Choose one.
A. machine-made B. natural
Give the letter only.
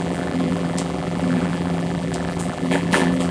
A